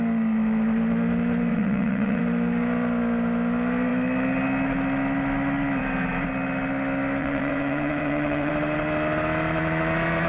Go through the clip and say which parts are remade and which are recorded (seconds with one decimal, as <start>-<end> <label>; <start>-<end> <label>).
0.0-1.5 recorded; 1.5-2.2 remade; 2.2-7.2 recorded; 7.2-8.5 remade; 8.5-10.3 recorded